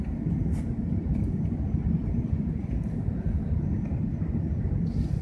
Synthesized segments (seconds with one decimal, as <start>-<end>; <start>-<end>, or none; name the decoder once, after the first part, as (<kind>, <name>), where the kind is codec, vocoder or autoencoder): 0.0-4.1 (vocoder, BigVGAN v2)